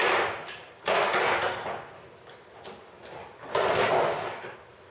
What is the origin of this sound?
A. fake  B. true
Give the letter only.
B